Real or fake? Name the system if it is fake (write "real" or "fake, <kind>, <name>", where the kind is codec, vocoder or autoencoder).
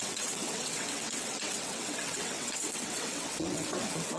fake, vocoder, WaveNeXt